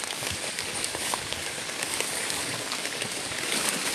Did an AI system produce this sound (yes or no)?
yes